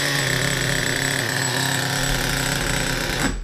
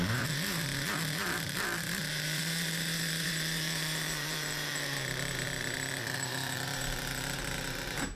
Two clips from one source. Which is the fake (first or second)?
second